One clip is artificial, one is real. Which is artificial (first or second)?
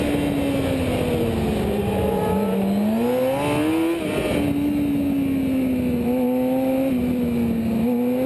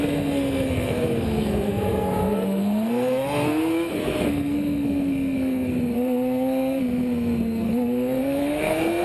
second